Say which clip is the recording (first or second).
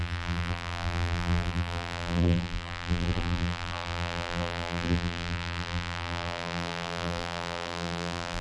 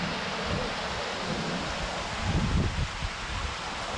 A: second